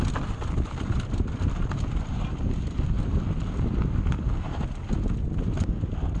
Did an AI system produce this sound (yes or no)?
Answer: no